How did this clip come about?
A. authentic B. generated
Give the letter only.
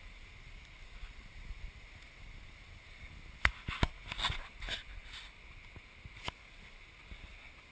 A